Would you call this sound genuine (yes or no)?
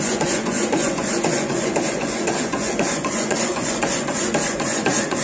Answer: no